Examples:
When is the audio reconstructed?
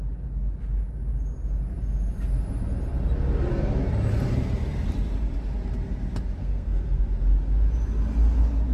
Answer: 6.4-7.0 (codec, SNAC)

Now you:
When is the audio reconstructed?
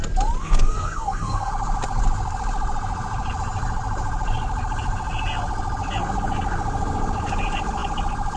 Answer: 0.4-1.5 (codec, SNAC)